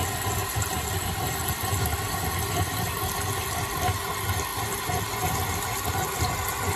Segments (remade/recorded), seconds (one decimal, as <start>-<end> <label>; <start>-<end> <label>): 0.0-6.8 recorded